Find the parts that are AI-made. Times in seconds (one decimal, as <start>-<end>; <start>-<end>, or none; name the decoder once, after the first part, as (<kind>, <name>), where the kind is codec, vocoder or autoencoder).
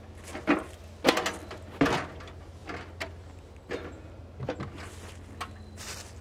none